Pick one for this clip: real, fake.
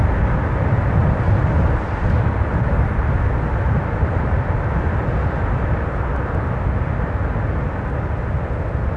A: real